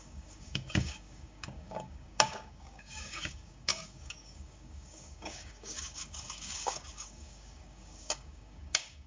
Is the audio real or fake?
fake